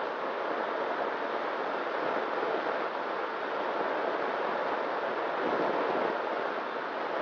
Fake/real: real